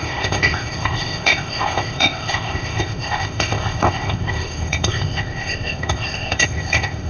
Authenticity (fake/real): fake